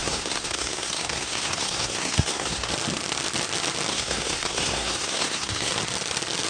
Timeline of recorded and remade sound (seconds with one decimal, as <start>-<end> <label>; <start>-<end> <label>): 0.0-2.7 remade; 2.7-3.9 recorded; 3.9-5.7 remade; 5.7-6.5 recorded